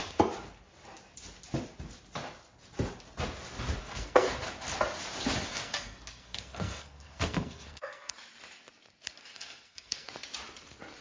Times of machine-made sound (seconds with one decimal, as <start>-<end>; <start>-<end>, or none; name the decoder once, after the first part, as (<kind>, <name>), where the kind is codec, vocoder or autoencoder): 3.8-4.3 (codec, SNAC); 5.5-8.1; 9.2-10.1